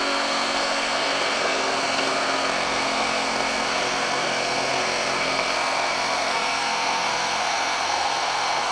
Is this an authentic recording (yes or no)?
no